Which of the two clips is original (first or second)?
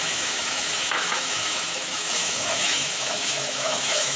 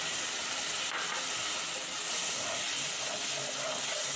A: second